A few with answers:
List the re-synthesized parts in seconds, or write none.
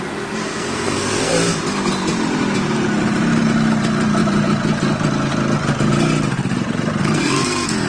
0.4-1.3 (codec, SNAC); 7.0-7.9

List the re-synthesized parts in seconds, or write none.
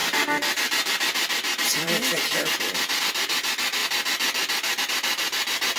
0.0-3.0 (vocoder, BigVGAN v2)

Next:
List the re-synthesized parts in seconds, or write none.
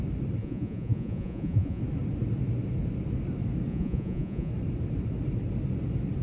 0.4-1.8 (vocoder, Vocos); 3.7-4.5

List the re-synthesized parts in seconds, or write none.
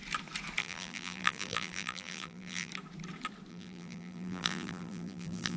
0.6-2.7 (vocoder, BigVGAN v2); 3.5-5.6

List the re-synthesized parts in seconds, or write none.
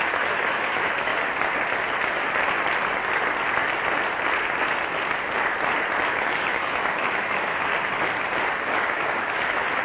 0.0-1.1 (autoencoder, DAC-VAE); 6.1-7.7; 8.6-9.8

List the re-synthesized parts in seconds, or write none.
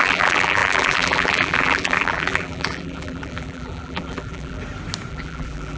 0.0-4.6 (vocoder, BigVGAN v2); 5.1-5.8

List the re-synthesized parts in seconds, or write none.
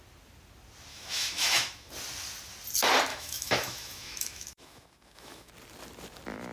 0.9-1.9 (autoencoder, DAC-VAE); 3.1-5.5